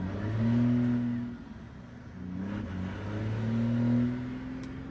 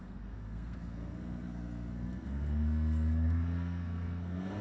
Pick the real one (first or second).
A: first